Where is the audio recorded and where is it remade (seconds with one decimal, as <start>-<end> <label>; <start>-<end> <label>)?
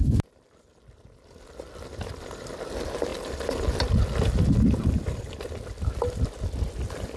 0.0-7.2 recorded